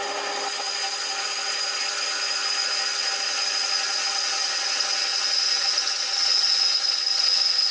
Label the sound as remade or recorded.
recorded